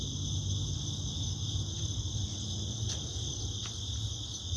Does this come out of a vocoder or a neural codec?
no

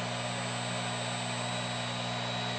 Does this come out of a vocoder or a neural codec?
no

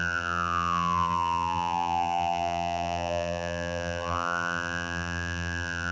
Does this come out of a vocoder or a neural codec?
yes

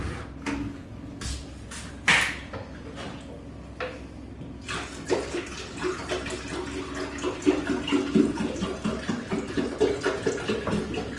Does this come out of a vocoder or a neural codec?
no